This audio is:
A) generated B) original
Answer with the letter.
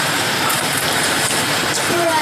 A